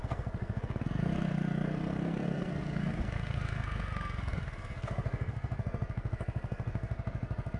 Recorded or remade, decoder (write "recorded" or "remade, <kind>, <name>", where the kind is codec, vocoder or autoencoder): remade, codec, SNAC